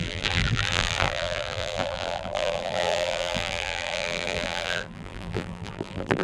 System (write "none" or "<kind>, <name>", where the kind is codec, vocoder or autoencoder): vocoder, BigVGAN v2